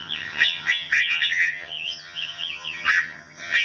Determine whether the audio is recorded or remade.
remade